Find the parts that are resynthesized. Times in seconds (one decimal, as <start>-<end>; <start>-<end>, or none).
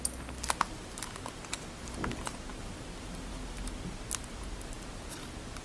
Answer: none